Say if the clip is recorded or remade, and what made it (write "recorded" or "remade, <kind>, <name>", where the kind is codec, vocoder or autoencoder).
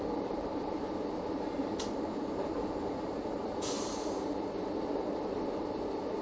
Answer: remade, vocoder, BigVGAN v2